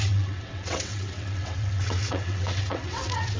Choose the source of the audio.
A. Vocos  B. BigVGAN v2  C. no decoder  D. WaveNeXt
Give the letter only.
D